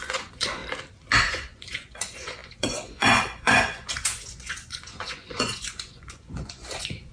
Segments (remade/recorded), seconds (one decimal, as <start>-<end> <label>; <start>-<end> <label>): 0.0-0.6 remade; 0.6-1.2 recorded; 1.2-7.1 remade